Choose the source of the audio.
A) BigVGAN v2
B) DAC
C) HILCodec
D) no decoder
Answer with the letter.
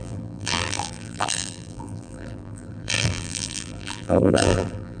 A